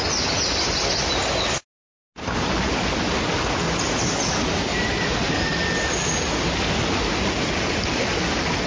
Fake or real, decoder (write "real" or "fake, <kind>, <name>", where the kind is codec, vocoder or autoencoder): real